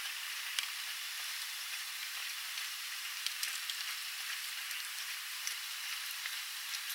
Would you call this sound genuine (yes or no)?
yes